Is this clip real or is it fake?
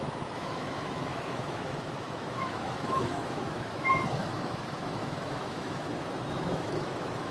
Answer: fake